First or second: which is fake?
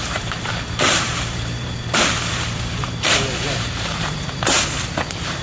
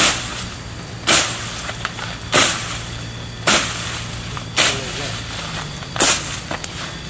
first